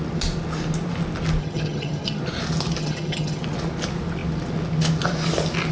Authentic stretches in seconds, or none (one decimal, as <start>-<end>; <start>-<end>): 0.0-1.4; 2.2-2.8; 3.4-5.7

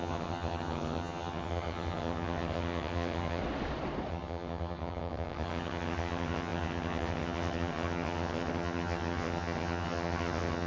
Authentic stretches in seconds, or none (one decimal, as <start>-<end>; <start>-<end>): 3.4-4.1

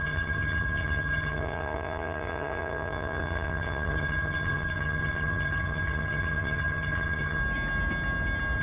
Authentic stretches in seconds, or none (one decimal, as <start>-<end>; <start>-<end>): 7.4-8.6